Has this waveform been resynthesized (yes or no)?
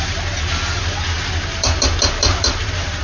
no